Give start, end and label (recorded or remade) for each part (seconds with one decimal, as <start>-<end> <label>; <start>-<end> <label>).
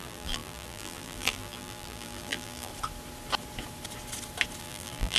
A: 0.0-2.7 remade; 2.7-4.6 recorded; 4.6-5.2 remade